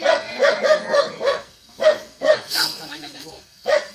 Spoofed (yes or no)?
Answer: yes